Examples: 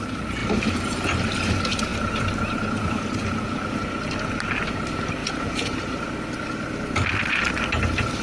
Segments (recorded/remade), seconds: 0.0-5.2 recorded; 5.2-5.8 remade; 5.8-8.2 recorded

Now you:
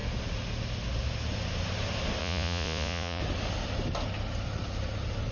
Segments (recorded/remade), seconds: 0.0-2.2 recorded; 2.2-3.2 remade; 3.2-5.3 recorded

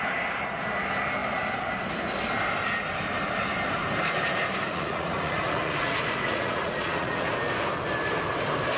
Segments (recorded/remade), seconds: 0.0-4.7 recorded; 4.7-7.3 remade; 7.3-8.8 recorded